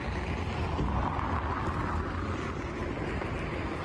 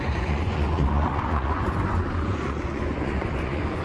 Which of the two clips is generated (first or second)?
second